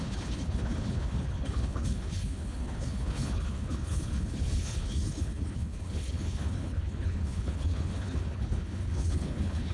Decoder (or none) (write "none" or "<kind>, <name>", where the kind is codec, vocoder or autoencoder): codec, HILCodec